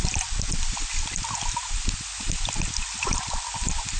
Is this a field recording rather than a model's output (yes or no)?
yes